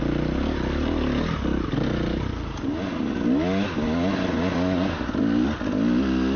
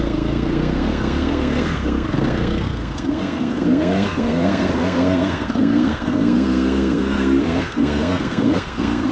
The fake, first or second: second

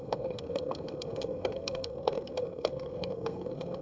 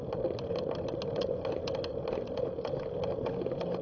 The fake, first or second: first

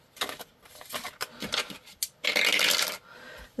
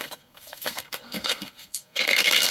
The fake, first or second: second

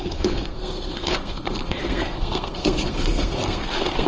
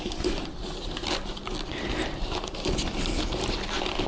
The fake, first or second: first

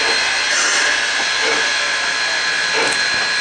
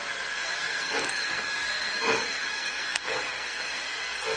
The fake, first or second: second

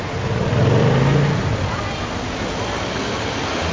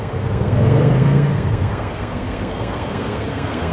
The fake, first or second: second